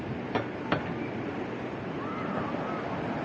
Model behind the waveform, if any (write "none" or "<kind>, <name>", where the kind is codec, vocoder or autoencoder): none